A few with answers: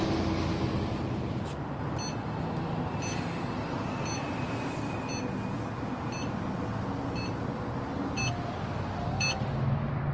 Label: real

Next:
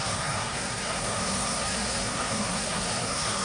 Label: fake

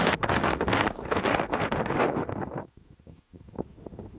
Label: fake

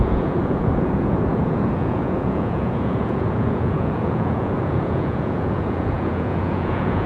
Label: fake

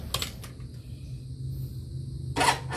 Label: real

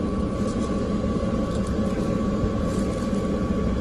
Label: real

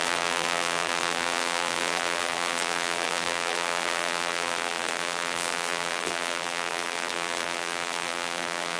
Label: fake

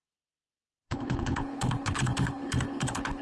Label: fake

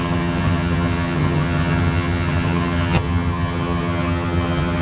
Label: fake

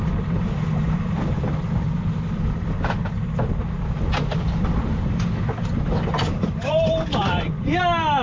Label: real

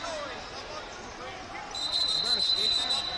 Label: real